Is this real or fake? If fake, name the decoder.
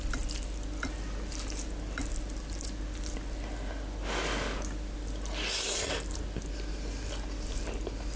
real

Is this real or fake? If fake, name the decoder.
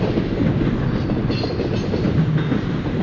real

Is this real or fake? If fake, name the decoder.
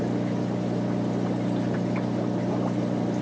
real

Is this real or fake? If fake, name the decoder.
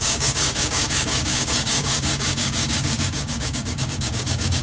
fake, codec, DAC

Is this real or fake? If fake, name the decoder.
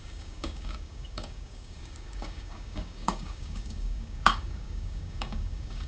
fake, codec, DAC